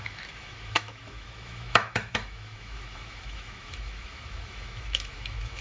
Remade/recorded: remade